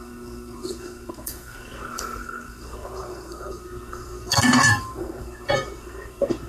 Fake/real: fake